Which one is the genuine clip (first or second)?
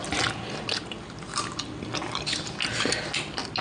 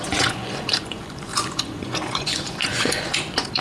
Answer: first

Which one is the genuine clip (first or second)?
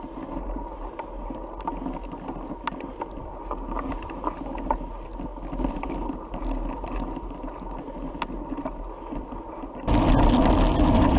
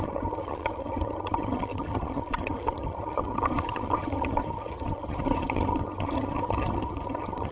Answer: first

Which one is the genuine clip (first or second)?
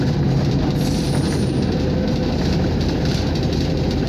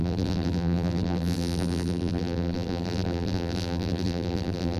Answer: first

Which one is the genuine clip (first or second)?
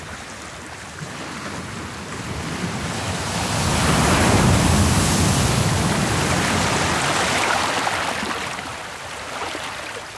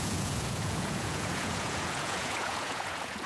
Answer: first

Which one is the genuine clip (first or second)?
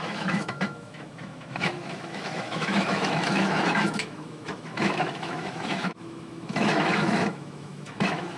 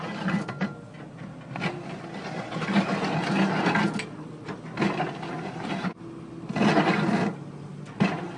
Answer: second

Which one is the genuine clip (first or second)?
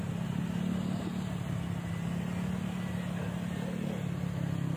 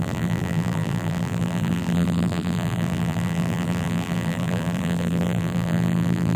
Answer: first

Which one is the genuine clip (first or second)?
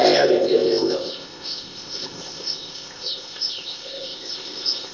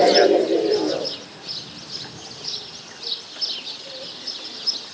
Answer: second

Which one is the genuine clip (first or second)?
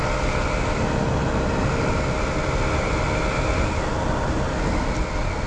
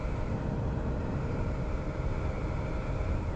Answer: first